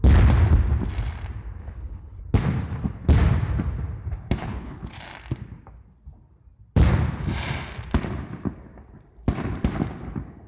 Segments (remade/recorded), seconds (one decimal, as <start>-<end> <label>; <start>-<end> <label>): 0.0-1.6 recorded; 1.6-2.2 remade; 2.2-4.4 recorded; 4.4-5.0 remade; 5.0-10.5 recorded